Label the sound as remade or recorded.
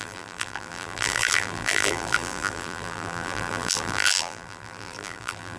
remade